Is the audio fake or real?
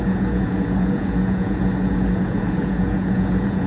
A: fake